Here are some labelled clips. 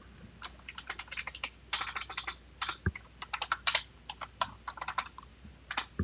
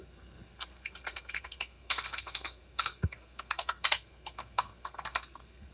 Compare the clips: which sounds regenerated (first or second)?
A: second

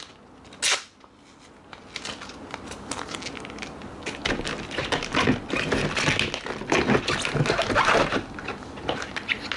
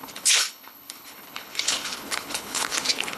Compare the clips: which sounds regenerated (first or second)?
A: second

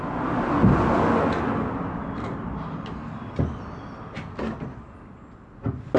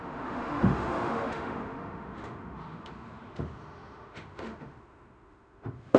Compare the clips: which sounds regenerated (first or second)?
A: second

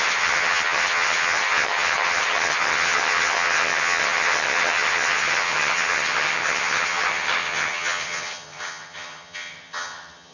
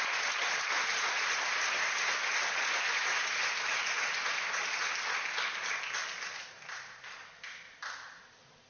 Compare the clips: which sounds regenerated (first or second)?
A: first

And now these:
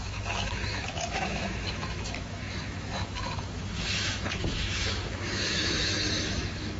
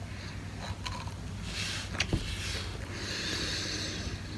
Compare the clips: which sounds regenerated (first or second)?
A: first